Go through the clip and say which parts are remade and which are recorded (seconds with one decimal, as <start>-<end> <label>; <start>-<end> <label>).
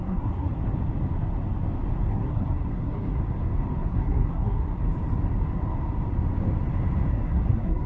0.0-0.5 remade; 0.5-2.1 recorded; 2.1-3.2 remade; 3.2-3.9 recorded; 3.9-4.8 remade; 4.8-7.1 recorded; 7.1-7.9 remade